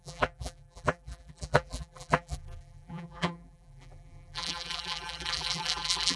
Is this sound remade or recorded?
remade